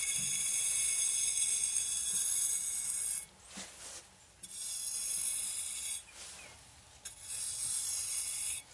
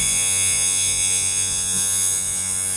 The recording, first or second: first